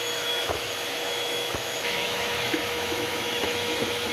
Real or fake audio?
fake